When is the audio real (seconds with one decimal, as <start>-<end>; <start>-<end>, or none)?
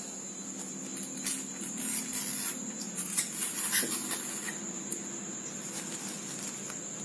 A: 0.0-7.0